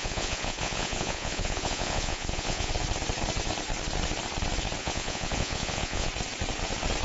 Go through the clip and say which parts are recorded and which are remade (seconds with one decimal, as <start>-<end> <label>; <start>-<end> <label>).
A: 0.0-2.7 remade; 2.7-4.8 recorded; 4.8-6.1 remade; 6.1-7.0 recorded